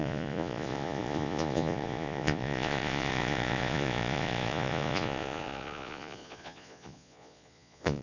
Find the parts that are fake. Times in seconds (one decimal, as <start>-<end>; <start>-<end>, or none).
0.0-8.0